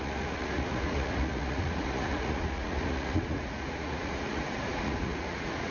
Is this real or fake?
fake